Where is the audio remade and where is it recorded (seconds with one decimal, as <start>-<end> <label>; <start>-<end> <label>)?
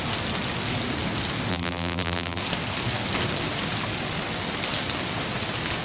0.0-1.5 recorded; 1.5-2.4 remade; 2.4-5.8 recorded